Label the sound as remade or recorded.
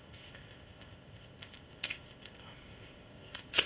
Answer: remade